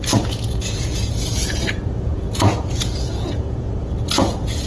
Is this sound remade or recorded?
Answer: remade